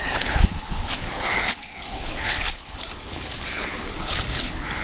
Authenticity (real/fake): fake